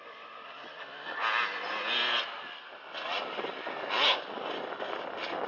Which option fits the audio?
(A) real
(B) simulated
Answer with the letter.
A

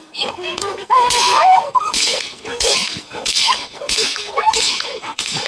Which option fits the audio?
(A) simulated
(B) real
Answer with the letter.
A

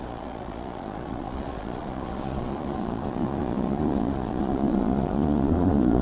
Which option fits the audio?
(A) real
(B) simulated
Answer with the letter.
B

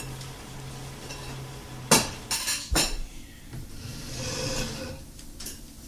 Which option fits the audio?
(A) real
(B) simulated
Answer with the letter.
A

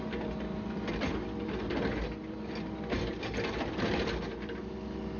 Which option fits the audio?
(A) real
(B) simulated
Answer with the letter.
A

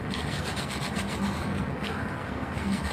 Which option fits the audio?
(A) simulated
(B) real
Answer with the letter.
A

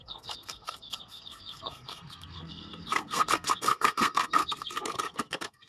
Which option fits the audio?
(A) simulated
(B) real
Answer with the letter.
A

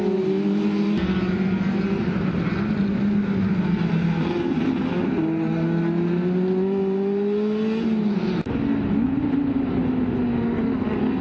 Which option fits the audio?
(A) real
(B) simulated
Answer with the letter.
A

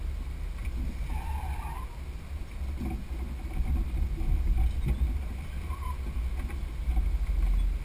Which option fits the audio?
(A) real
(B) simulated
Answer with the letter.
A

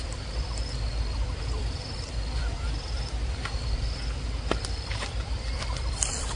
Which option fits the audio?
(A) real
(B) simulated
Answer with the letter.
B